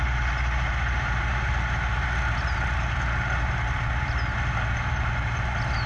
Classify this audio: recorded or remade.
recorded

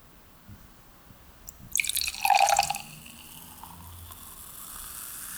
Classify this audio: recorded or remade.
recorded